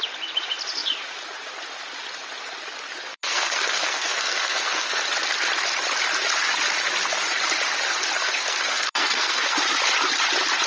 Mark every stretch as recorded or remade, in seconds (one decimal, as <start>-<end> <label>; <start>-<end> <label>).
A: 0.0-3.1 recorded; 3.1-5.0 remade; 5.0-8.2 recorded; 8.2-9.6 remade; 9.6-10.7 recorded